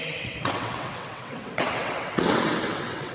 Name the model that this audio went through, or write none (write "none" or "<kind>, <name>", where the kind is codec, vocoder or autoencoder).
vocoder, WaveNeXt